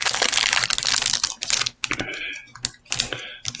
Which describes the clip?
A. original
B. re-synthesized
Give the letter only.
A